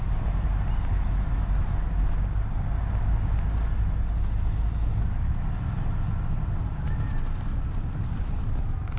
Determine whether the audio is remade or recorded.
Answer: recorded